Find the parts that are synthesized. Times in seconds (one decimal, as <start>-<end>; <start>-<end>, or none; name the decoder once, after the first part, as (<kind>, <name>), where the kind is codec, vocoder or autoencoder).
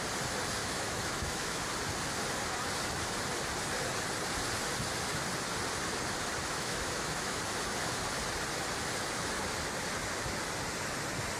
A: 0.6-1.6 (autoencoder, DAC-VAE); 6.4-7.4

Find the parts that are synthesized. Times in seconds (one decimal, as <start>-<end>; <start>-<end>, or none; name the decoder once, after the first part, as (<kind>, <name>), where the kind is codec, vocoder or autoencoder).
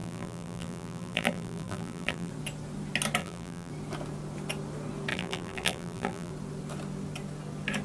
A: 0.0-2.3 (vocoder, BigVGAN v2); 3.2-3.7; 5.1-6.3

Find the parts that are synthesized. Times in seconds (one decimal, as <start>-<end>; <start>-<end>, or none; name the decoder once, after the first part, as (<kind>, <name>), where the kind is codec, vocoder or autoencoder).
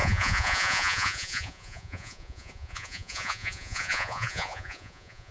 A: 0.0-5.3 (vocoder, Vocos)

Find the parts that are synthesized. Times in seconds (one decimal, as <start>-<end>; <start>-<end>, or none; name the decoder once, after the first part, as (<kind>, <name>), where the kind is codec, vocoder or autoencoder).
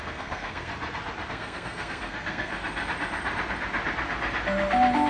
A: 0.0-0.7 (codec, SNAC); 1.3-2.5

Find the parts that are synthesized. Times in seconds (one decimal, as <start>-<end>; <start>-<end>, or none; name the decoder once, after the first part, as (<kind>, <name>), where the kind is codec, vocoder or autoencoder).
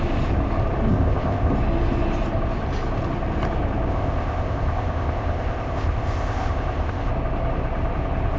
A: 0.9-1.5 (codec, ZipCodec); 3.9-7.1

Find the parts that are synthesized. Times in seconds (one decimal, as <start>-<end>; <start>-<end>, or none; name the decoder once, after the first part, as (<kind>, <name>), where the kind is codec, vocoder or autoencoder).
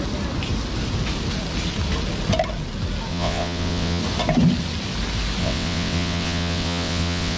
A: 3.1-4.0 (vocoder, WaveNeXt); 5.4-7.4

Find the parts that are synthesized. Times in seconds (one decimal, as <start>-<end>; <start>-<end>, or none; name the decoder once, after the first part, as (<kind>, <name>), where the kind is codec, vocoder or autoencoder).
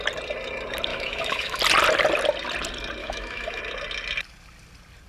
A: 0.9-1.6 (autoencoder, DAC-VAE); 3.0-3.6